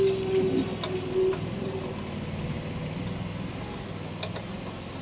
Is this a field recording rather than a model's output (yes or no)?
yes